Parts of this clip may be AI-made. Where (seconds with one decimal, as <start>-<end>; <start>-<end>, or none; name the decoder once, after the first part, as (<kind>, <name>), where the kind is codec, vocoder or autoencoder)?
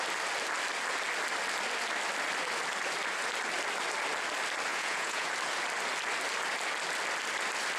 4.7-5.3 (vocoder, Vocos)